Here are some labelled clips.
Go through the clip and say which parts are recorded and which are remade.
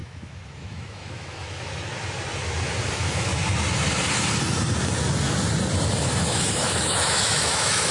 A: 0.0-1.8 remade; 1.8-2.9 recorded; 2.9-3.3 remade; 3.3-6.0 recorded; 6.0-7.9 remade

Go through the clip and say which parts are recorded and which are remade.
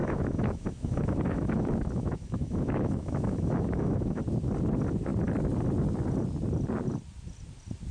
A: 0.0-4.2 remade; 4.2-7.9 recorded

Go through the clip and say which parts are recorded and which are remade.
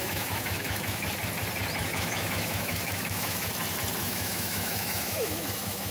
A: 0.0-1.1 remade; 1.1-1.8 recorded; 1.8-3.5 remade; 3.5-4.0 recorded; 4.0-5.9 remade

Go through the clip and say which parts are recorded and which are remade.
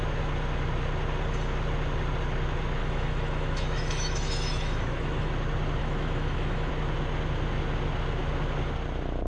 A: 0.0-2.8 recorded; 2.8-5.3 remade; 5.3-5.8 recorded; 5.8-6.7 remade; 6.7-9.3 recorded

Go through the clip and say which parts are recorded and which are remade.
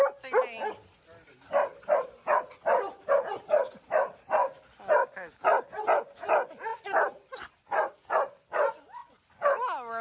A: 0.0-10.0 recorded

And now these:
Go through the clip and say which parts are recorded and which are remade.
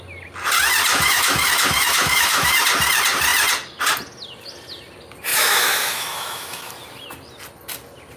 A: 0.0-0.9 recorded; 0.9-2.6 remade; 2.6-5.3 recorded; 5.3-6.7 remade; 6.7-8.2 recorded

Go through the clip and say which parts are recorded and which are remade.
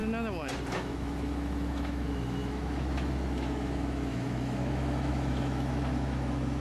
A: 0.0-0.7 recorded; 0.7-6.6 remade